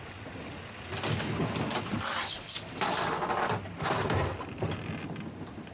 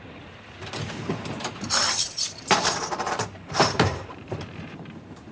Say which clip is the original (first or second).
first